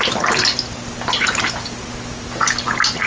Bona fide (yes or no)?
yes